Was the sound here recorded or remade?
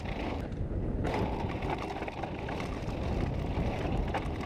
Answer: recorded